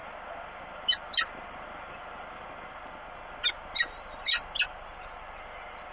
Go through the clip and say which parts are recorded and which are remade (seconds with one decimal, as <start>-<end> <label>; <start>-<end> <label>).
0.0-5.9 recorded